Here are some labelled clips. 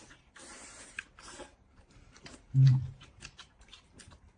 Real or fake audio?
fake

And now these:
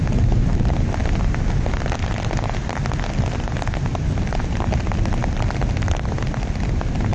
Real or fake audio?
real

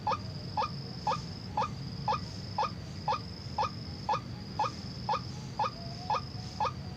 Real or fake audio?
real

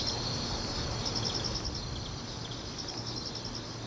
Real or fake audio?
real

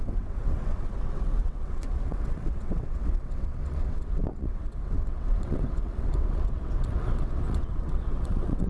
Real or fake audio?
fake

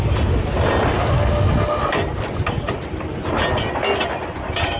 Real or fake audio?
real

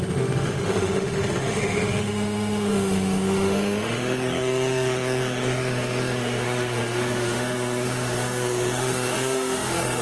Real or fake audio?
fake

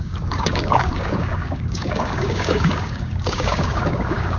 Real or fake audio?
fake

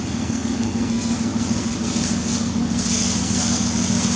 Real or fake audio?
fake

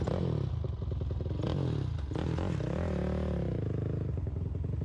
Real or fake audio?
real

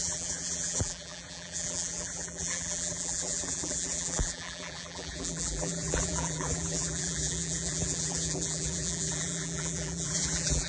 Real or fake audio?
fake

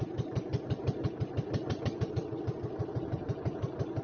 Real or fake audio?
real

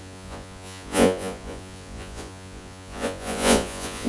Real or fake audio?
fake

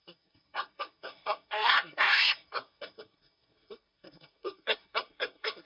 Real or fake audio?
fake